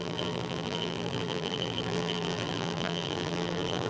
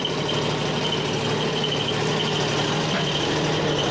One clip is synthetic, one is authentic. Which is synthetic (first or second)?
first